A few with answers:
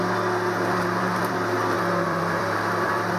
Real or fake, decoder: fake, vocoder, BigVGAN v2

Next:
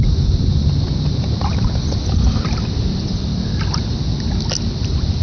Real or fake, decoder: real